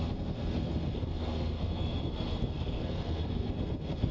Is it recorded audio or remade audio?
remade